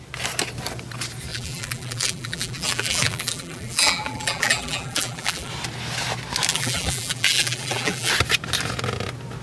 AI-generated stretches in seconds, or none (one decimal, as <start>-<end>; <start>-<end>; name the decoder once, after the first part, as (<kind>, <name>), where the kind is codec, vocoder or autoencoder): 1.3-5.5 (vocoder, BigVGAN v2); 6.5-8.1